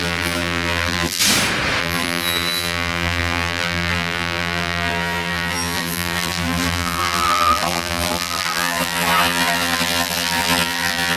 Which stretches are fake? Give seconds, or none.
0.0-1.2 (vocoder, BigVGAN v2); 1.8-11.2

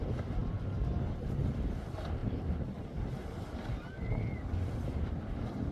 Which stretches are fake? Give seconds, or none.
none

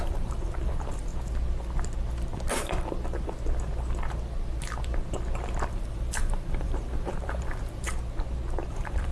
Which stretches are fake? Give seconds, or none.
0.0-1.1 (vocoder, BigVGAN v2); 5.7-7.9; 8.7-9.1

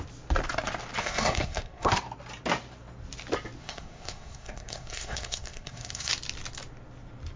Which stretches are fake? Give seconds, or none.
1.0-1.9 (codec, SNAC); 3.6-6.1

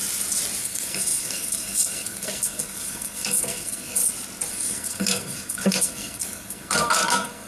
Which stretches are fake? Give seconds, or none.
0.6-4.0 (codec, SNAC); 4.5-7.5

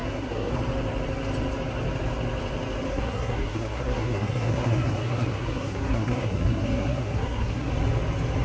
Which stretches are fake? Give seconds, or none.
0.0-0.5 (codec, SNAC); 2.9-7.7

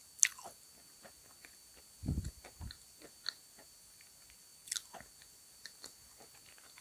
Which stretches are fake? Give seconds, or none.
none

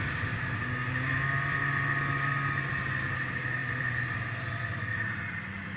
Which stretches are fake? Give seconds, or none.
3.6-5.8 (vocoder, BigVGAN v2)